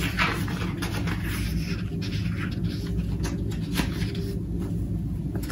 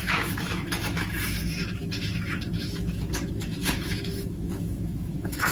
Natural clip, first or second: first